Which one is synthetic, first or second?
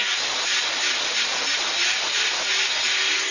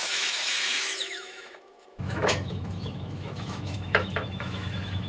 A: second